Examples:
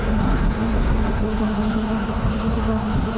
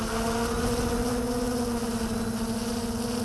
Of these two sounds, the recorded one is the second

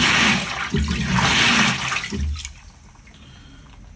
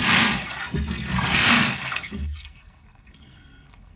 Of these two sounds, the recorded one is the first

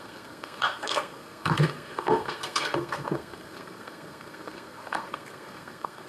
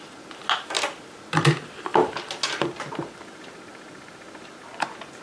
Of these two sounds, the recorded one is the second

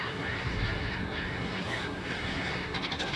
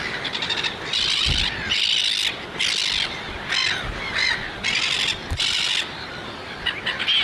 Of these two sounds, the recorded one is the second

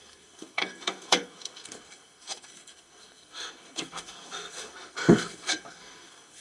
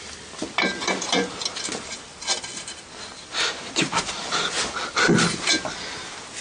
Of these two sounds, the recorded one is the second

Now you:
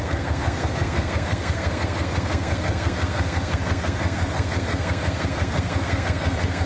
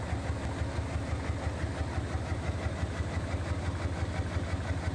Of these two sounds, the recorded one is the second